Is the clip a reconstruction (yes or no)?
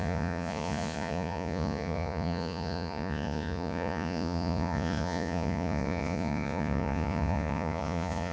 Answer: yes